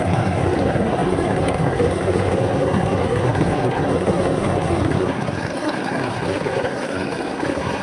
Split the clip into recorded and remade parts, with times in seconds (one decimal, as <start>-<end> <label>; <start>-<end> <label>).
0.0-7.8 remade